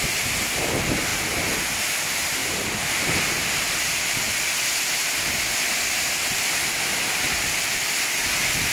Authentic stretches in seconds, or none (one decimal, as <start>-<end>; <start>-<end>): 0.0-2.4; 2.9-8.7